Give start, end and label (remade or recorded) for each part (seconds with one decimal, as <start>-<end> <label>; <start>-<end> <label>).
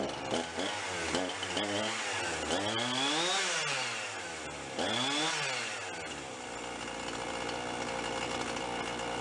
0.0-9.2 recorded